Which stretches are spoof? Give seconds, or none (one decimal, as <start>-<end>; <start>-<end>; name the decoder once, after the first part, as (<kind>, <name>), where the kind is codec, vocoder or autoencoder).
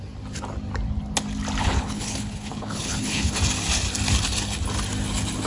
1.6-3.4 (codec, HILCodec)